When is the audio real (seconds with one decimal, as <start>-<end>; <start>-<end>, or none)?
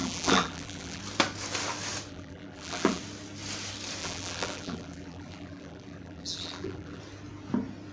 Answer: 1.0-2.1; 3.0-4.0; 7.0-7.9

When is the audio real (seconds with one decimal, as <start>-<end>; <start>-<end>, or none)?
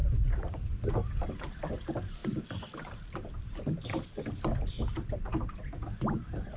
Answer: 0.9-6.6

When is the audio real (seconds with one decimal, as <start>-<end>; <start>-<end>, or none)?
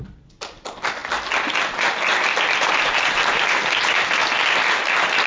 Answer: 0.0-5.3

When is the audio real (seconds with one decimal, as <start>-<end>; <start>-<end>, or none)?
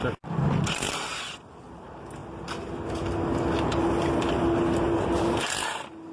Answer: 0.0-6.1